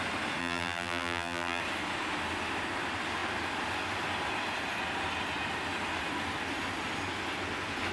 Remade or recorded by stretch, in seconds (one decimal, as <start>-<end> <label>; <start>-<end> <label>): 0.0-0.4 recorded; 0.4-1.6 remade; 1.6-7.9 recorded